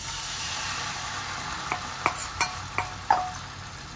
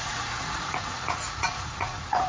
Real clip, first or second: first